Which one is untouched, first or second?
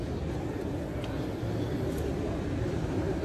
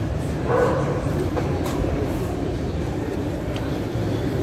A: first